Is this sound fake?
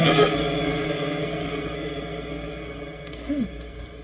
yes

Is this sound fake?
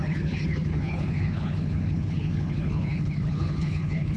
yes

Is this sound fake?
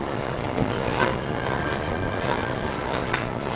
yes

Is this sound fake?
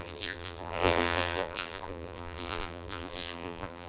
yes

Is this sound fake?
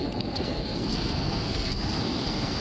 yes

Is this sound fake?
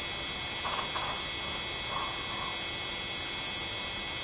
no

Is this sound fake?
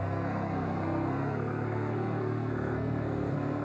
yes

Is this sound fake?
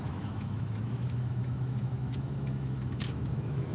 yes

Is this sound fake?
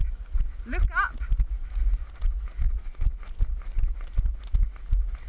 no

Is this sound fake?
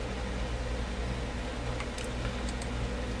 no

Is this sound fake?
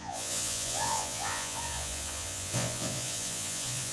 yes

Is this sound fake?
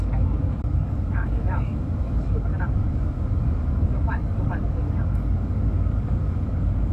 yes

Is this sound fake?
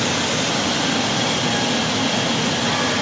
no